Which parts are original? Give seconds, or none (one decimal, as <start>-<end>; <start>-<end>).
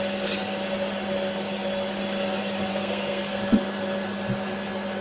0.0-2.7; 3.4-5.0